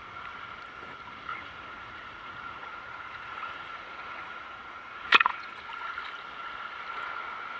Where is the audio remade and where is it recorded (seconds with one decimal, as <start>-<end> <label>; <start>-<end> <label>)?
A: 0.0-1.3 recorded; 1.3-5.6 remade; 5.6-7.6 recorded